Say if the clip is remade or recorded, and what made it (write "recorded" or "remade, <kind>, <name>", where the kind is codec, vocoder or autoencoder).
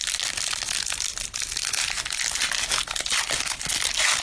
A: recorded